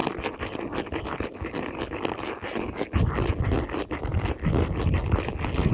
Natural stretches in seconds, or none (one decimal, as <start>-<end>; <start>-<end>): 0.0-5.7